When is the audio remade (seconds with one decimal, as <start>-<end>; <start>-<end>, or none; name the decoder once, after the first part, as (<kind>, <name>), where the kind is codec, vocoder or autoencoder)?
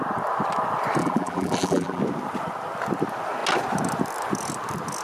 1.0-2.0 (vocoder, BigVGAN v2)